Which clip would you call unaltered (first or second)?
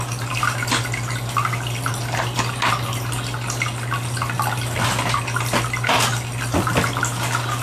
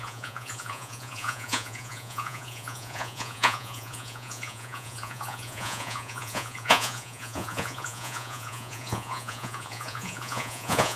first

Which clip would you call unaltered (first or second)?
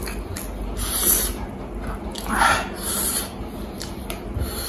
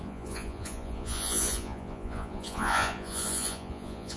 first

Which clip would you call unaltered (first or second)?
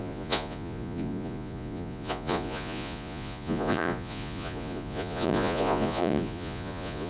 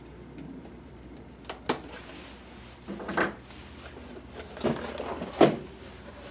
second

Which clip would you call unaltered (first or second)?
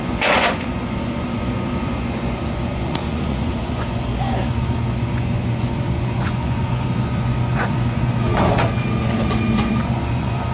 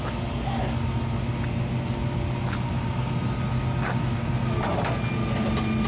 second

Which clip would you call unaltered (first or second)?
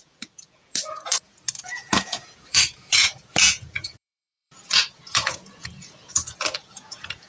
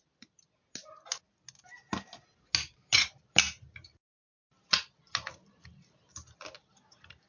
second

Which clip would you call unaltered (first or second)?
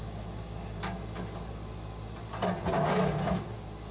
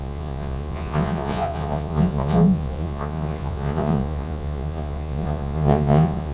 first